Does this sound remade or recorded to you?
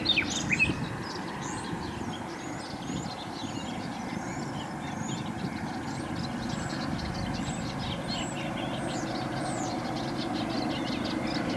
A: recorded